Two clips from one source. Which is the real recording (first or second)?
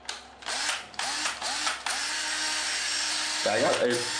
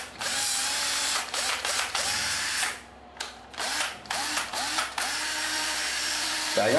first